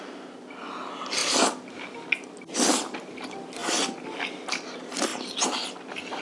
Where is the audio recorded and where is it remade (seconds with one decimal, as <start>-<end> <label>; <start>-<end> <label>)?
0.0-6.2 recorded